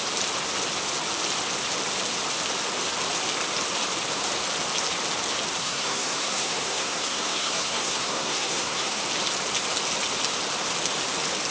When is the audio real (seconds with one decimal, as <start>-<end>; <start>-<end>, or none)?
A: 0.0-5.6; 9.0-11.5